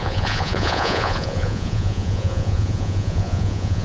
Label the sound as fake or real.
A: fake